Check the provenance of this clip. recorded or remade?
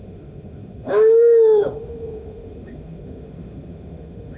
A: remade